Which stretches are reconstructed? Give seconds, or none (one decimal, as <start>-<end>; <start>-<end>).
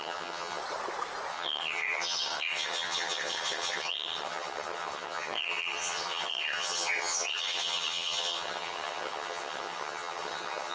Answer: 0.0-0.6; 1.3-10.7